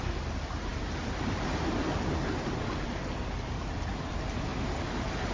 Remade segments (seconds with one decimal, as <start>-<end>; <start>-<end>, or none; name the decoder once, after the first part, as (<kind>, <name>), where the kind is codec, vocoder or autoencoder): none